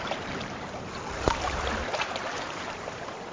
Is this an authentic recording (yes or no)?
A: no